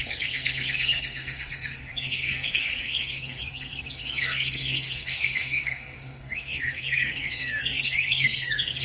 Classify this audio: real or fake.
fake